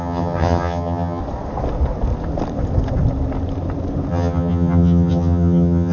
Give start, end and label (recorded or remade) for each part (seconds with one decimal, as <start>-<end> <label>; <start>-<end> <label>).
0.0-1.2 remade; 1.2-4.1 recorded; 4.1-5.9 remade

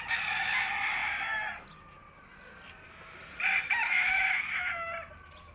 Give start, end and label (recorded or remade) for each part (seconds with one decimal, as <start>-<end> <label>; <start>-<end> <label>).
0.0-3.8 recorded; 3.8-4.7 remade; 4.7-5.5 recorded

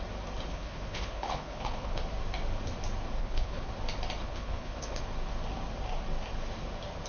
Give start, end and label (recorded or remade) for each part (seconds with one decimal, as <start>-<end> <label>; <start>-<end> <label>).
0.0-0.5 recorded; 0.5-2.0 remade; 2.0-3.2 recorded; 3.2-3.7 remade; 3.7-4.2 recorded; 4.2-5.0 remade; 5.0-7.1 recorded

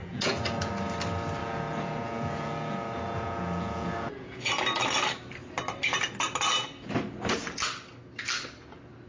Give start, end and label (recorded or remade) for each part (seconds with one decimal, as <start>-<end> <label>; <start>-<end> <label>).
0.0-0.7 remade; 0.7-1.4 recorded; 1.4-4.5 remade; 4.5-9.1 recorded